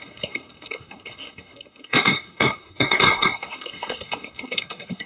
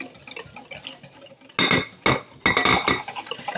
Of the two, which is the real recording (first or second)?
second